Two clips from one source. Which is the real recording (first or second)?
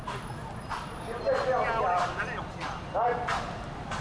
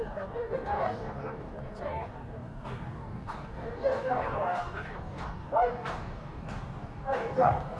first